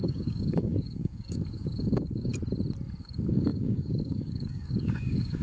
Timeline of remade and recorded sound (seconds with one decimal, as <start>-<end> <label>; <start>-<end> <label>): 0.0-2.3 remade; 2.3-3.0 recorded; 3.0-5.4 remade